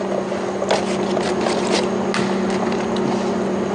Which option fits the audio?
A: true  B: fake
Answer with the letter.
A